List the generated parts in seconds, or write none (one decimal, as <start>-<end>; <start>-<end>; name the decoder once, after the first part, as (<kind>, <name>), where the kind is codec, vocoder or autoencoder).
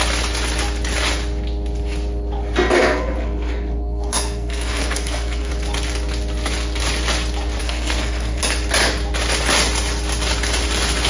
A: 2.8-5.5 (codec, SNAC); 7.6-8.4